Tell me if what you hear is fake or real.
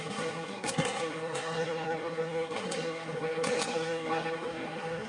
fake